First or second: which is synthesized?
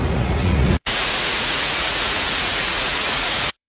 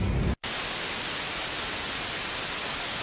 first